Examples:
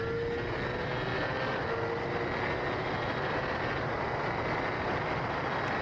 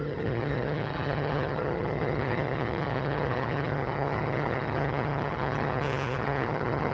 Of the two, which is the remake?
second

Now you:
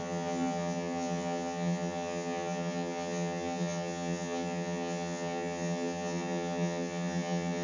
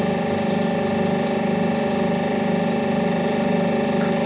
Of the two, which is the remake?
first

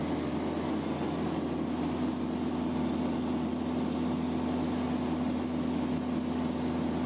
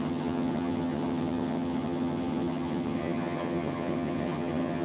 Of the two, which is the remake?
second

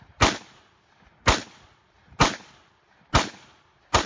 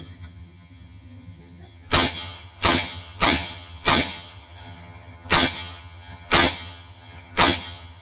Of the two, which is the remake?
second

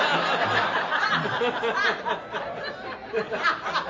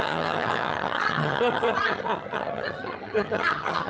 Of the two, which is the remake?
second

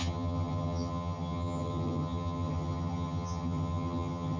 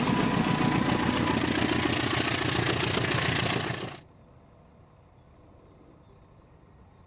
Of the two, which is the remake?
first